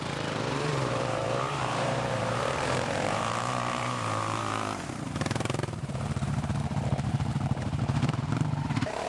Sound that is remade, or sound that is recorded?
remade